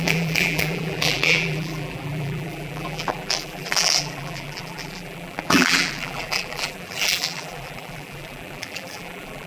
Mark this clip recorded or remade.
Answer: remade